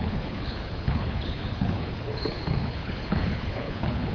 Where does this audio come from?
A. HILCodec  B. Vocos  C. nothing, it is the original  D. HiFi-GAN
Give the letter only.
A